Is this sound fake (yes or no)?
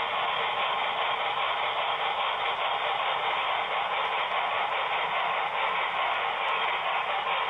no